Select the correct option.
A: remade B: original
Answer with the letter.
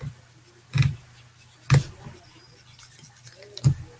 B